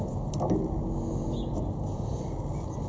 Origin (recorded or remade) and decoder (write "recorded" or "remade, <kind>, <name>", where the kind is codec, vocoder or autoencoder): recorded